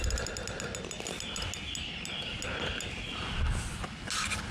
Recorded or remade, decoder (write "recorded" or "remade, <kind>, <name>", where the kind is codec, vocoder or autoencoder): recorded